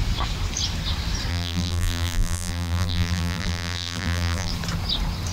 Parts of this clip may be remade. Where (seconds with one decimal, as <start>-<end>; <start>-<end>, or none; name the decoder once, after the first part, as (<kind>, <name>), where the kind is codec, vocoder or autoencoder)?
1.3-4.5 (vocoder, BigVGAN v2)